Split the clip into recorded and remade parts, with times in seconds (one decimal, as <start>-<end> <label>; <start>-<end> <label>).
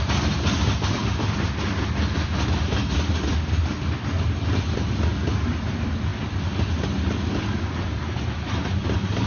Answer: 0.0-9.3 recorded